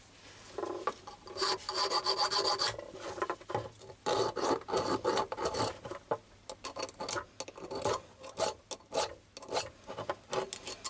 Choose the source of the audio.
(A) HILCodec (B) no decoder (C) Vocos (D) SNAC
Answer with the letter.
B